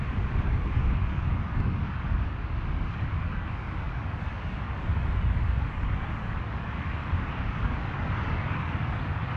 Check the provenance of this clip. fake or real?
fake